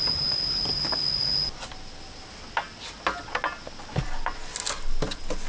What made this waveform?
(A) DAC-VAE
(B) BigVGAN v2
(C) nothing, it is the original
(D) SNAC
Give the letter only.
C